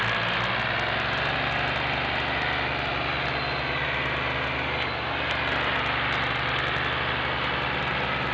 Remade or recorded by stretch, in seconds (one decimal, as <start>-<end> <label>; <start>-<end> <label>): 0.0-8.3 recorded